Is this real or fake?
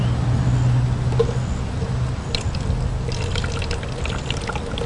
real